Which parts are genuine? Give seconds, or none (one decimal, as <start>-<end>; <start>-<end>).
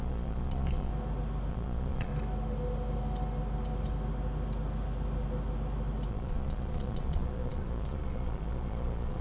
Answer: 0.9-1.5; 2.1-6.1